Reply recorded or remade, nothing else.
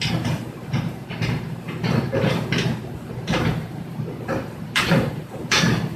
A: remade